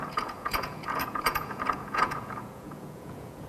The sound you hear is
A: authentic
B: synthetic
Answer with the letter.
B